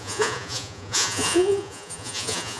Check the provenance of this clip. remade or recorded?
remade